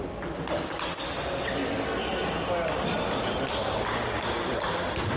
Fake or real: real